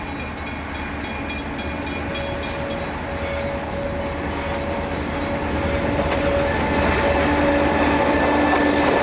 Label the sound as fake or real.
real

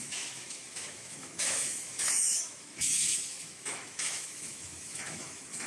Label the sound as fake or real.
fake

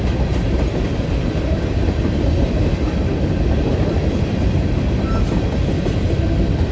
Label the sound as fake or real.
fake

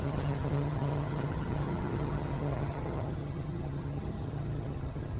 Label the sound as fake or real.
fake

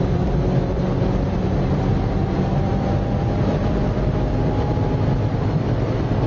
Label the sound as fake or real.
fake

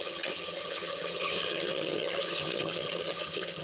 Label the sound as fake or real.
fake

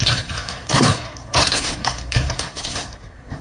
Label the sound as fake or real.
fake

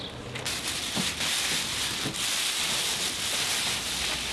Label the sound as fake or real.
real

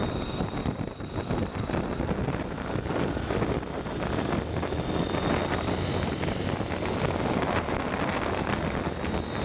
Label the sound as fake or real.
real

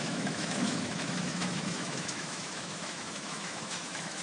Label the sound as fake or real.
fake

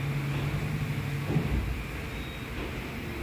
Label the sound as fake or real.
real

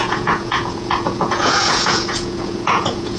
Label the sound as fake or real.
fake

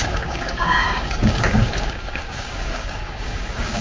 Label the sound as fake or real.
fake